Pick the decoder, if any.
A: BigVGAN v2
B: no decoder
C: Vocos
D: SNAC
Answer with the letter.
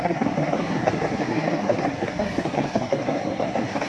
D